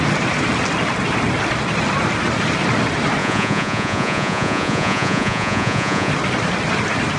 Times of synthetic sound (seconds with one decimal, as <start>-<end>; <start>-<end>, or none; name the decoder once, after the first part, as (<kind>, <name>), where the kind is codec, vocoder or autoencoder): 3.2-6.1 (vocoder, Vocos)